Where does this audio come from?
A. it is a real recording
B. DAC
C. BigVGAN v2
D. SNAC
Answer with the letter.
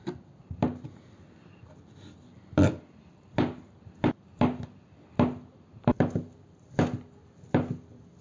A